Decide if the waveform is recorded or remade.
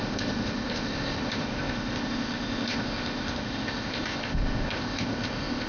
remade